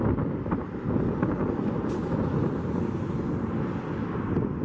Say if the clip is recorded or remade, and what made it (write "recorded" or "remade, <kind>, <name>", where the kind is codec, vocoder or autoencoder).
recorded